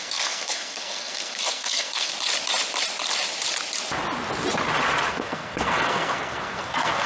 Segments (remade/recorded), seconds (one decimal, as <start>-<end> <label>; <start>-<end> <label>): 0.0-2.1 remade; 2.1-5.1 recorded; 5.1-7.1 remade